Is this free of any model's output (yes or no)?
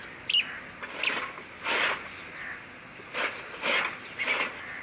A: yes